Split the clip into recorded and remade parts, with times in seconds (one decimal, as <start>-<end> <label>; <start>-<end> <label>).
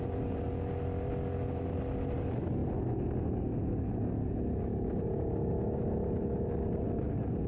0.0-7.5 recorded